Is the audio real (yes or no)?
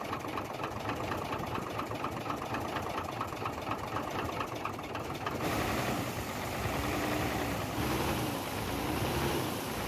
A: no